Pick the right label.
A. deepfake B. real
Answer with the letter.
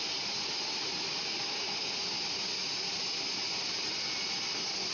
B